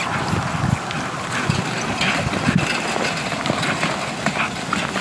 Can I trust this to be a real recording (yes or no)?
yes